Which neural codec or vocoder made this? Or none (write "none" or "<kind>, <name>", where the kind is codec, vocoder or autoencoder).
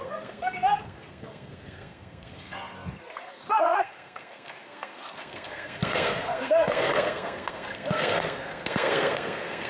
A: codec, SNAC